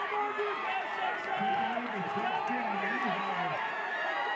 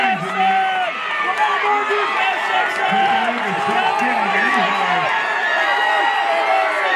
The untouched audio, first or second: second